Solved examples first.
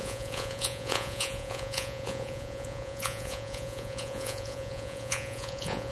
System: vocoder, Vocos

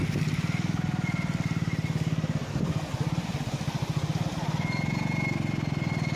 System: none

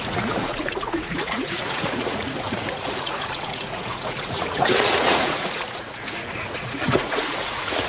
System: vocoder, Vocos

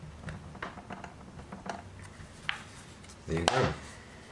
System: none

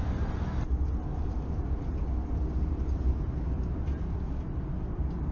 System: none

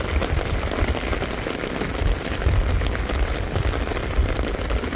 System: none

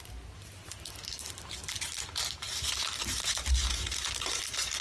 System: none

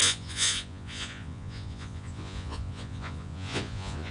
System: vocoder, Vocos